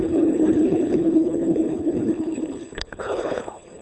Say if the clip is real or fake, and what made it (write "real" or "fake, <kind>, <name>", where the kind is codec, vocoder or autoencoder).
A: fake, codec, HILCodec